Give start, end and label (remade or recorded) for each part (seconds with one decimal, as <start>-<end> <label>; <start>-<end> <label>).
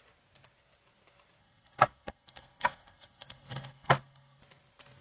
0.0-1.4 recorded; 1.4-4.4 remade; 4.4-5.0 recorded